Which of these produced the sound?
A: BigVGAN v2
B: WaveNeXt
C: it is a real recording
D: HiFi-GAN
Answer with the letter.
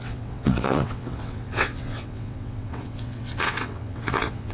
B